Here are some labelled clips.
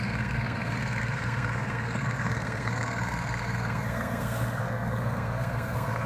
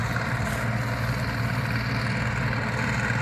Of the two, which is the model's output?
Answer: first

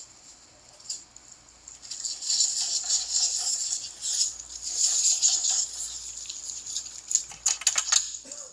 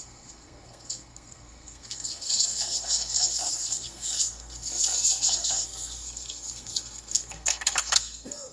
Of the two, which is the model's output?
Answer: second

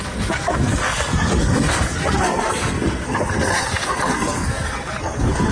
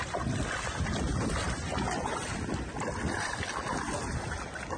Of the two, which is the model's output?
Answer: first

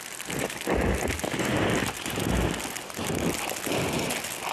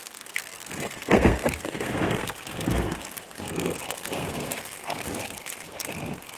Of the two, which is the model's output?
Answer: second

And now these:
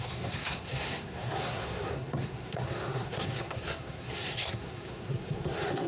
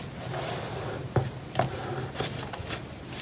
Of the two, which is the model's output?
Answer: first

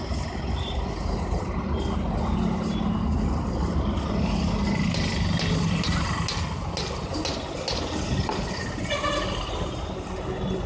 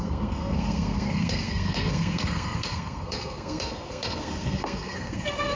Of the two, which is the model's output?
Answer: second